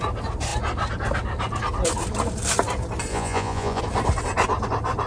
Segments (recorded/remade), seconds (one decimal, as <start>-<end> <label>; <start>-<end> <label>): 0.0-3.1 recorded; 3.1-3.8 remade; 3.8-5.1 recorded